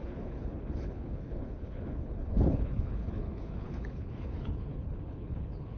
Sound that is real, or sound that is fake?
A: fake